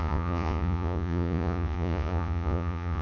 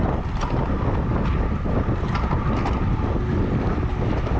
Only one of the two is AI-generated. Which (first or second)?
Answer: first